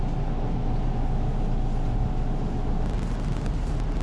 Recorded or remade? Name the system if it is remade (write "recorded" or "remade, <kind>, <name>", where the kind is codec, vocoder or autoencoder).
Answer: recorded